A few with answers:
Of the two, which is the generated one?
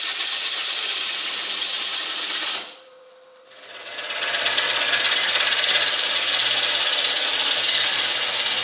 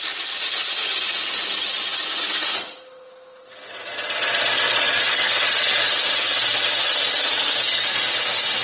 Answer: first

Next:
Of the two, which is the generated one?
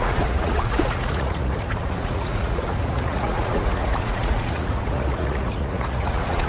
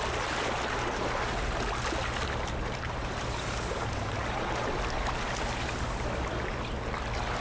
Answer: first